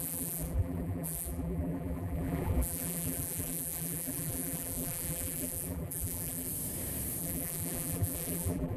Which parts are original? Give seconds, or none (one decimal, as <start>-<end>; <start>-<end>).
6.5-7.2